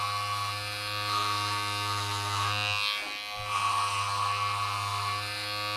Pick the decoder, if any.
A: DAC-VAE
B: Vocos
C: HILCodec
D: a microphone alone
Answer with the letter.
D